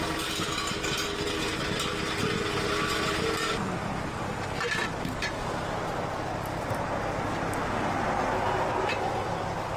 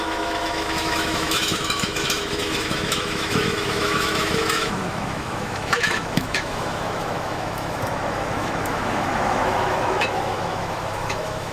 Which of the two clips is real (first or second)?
first